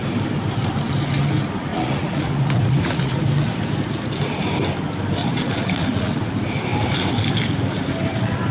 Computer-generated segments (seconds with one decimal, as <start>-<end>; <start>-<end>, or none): 1.7-3.2; 5.2-6.2